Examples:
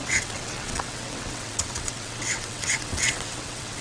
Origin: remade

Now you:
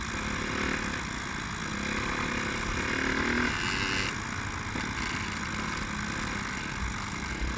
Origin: recorded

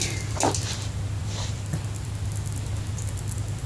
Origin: recorded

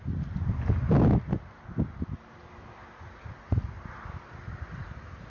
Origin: recorded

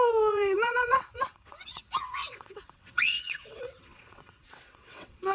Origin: remade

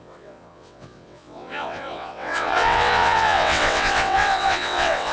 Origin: remade